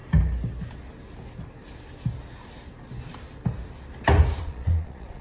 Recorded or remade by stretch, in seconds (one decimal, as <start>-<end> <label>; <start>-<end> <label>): 0.0-4.4 recorded; 4.4-5.2 remade